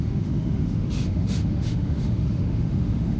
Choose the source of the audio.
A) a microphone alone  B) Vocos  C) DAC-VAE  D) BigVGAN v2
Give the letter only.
C